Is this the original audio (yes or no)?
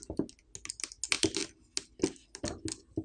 yes